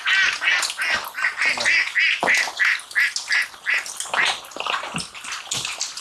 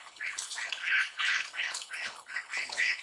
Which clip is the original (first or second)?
first